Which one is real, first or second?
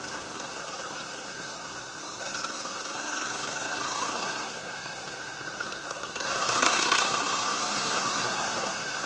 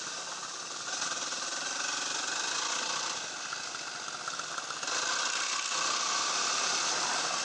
second